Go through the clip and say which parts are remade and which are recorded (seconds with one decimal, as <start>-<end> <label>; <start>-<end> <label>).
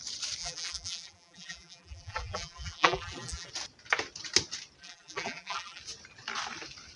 0.0-0.4 recorded; 0.4-3.5 remade; 3.5-4.8 recorded; 4.8-5.8 remade; 5.8-7.0 recorded